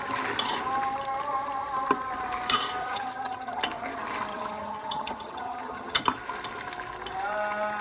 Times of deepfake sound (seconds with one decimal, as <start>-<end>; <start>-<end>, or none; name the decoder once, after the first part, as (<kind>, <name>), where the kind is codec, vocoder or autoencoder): 2.8-3.6 (vocoder, HiFi-GAN); 4.3-6.0

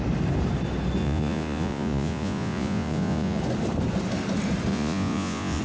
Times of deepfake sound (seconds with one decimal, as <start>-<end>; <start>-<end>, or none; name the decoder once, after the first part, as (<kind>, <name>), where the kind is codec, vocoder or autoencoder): 1.0-3.4 (vocoder, Vocos); 4.7-5.6

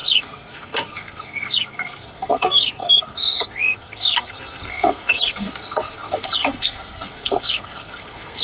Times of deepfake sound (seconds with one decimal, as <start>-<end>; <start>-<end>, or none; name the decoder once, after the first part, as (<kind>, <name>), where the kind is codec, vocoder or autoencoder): 0.0-8.4 (codec, SNAC)